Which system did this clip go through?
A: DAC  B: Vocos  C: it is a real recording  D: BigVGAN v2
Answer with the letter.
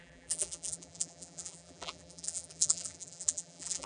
D